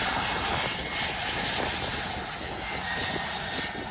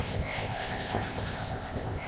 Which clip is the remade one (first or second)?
second